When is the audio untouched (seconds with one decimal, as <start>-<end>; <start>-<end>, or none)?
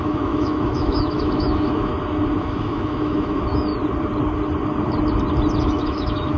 1.9-2.4; 3.7-5.6